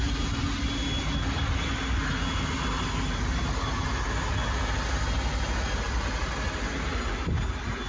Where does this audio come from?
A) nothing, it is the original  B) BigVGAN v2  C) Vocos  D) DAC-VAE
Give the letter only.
A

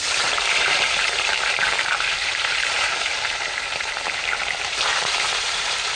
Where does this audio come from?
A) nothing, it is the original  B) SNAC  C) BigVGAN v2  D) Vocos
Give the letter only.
C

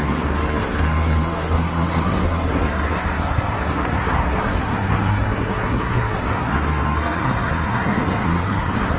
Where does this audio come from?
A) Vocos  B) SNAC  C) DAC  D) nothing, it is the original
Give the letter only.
B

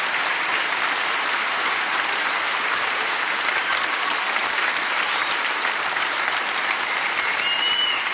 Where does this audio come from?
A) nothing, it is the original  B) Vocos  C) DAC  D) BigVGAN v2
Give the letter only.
D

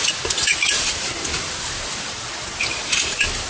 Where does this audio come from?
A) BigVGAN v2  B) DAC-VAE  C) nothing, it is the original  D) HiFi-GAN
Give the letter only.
C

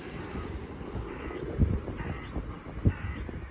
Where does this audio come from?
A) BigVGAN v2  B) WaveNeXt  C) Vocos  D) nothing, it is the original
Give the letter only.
D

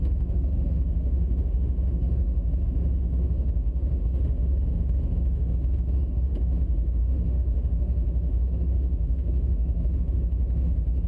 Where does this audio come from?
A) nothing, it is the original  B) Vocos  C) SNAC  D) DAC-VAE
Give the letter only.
D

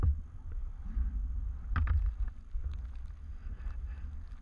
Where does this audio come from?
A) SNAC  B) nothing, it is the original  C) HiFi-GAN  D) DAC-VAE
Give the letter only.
B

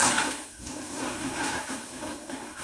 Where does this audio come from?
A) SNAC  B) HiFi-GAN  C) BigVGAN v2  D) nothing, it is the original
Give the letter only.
A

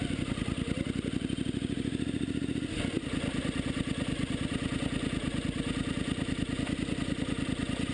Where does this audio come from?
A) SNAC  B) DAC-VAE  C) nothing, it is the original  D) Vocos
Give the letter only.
C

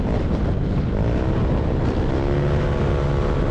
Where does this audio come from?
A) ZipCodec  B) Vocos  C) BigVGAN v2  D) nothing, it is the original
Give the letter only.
D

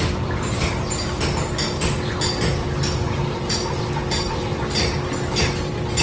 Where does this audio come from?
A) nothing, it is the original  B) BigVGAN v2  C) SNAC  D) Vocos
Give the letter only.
A